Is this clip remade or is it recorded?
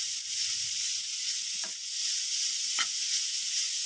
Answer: remade